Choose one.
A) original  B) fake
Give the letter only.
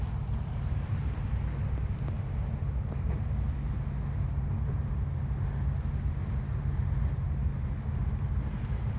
A